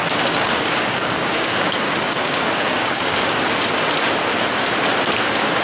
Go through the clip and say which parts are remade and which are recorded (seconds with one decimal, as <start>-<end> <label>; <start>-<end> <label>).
0.0-3.4 remade; 3.4-5.6 recorded